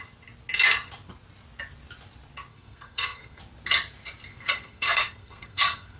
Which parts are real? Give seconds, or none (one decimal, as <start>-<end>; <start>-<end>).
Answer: 0.0-2.5; 3.4-4.3